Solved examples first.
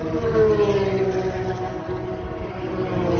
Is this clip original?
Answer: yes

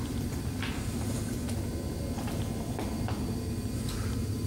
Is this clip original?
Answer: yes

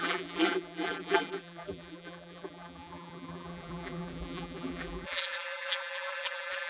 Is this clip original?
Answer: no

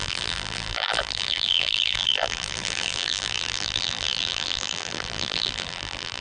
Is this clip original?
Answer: no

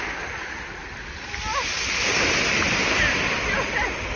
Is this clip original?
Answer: yes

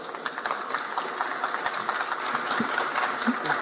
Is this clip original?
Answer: yes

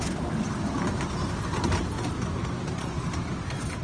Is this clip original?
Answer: yes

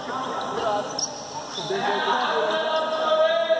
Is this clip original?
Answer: yes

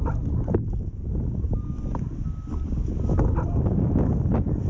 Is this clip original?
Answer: yes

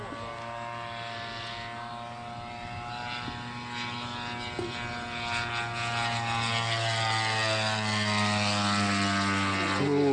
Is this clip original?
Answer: yes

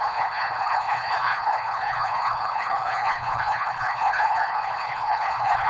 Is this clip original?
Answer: no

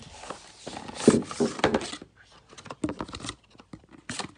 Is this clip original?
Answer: yes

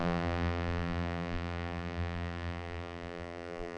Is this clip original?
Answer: no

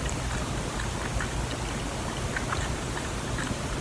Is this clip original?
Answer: yes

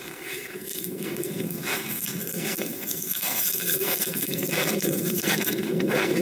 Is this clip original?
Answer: no